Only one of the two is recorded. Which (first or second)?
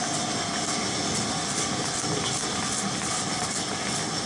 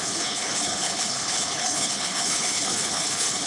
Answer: first